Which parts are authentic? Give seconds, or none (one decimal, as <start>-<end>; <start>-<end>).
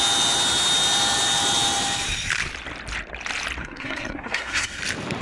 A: 0.0-3.6; 4.8-5.2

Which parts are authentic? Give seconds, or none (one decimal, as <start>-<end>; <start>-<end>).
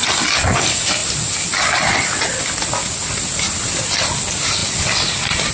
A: 0.0-4.6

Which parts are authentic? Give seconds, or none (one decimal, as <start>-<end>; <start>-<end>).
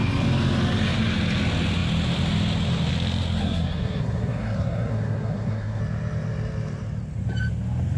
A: 0.0-3.4; 5.8-8.0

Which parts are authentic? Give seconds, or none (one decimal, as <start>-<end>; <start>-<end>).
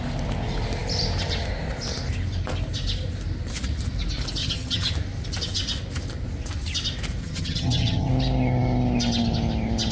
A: 0.0-4.4; 4.9-7.2; 8.1-9.9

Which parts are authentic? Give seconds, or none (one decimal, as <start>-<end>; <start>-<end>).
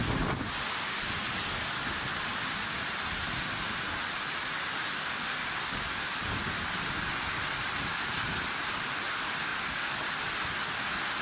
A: 0.0-11.2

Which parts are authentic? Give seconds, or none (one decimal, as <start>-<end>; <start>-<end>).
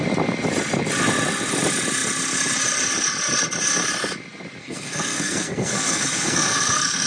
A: 0.0-4.6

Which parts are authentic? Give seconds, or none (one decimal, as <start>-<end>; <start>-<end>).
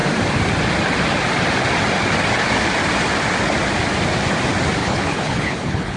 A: 0.0-4.8